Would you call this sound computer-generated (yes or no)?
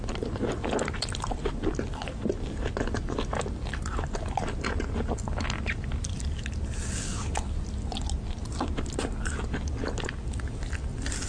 no